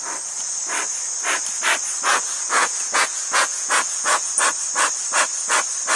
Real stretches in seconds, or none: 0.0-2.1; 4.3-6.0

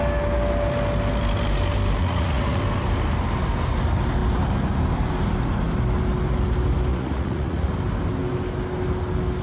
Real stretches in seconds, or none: 0.0-2.0; 2.6-6.9; 7.7-9.4